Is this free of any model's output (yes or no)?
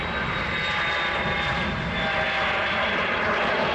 yes